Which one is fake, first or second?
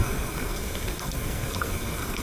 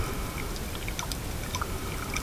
first